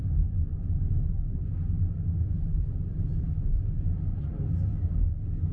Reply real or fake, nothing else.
real